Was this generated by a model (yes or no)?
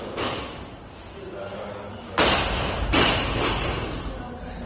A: no